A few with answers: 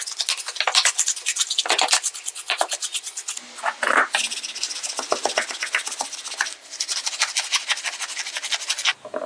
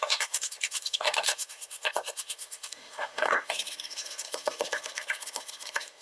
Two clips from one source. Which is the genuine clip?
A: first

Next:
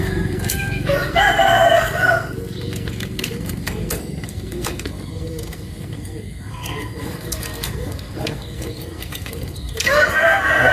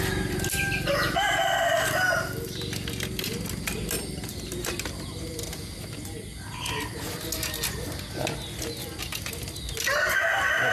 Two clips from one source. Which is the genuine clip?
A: second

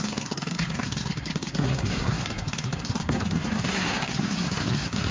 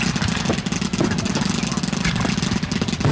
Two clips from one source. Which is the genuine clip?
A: second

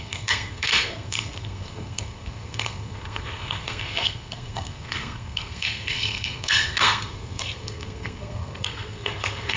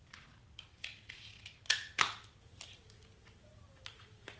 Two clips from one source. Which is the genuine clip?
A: second